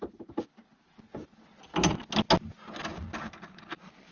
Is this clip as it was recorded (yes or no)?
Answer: yes